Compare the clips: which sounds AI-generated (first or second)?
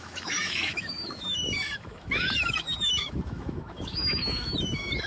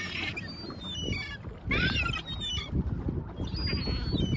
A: first